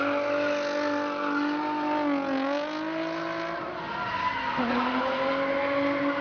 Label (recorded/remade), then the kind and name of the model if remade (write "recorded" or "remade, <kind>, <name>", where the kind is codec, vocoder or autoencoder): recorded